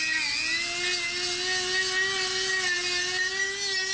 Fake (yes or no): no